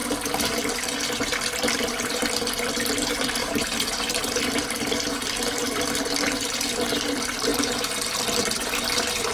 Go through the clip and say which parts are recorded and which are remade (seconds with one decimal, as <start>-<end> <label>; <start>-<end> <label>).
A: 0.0-3.4 recorded; 3.4-4.2 remade; 4.2-7.5 recorded; 7.5-8.8 remade; 8.8-9.3 recorded